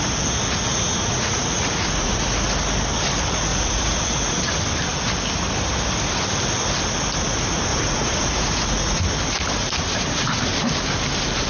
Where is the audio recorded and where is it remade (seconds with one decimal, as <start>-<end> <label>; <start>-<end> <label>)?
0.0-0.7 recorded; 0.7-2.1 remade; 2.1-3.5 recorded; 3.5-4.5 remade; 4.5-7.7 recorded; 7.7-9.0 remade; 9.0-11.5 recorded